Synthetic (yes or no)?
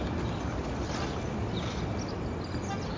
no